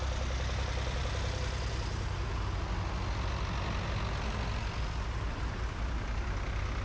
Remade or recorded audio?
recorded